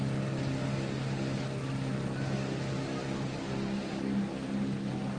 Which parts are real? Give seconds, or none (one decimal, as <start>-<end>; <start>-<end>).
0.0-5.2